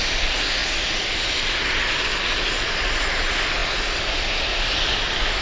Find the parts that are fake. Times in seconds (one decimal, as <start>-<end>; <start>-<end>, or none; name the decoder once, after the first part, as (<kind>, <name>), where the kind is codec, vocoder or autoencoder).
none